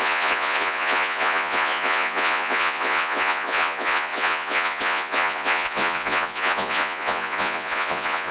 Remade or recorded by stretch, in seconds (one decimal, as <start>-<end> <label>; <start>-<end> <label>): 0.0-8.3 remade